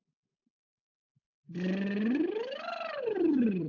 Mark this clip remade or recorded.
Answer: recorded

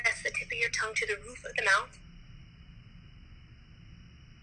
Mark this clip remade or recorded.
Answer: recorded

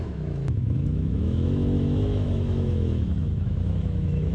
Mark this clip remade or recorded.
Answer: remade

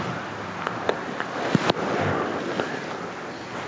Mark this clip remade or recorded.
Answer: recorded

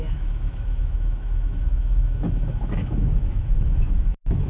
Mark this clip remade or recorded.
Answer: remade